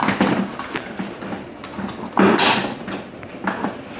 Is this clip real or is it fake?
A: real